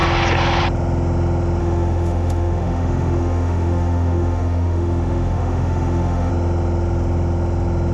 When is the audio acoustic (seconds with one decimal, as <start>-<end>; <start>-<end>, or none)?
0.0-1.6; 6.3-7.9